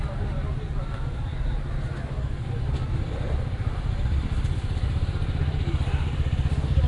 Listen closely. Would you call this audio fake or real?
fake